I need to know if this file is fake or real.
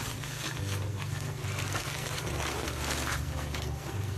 fake